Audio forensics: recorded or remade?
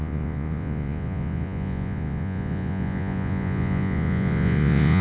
remade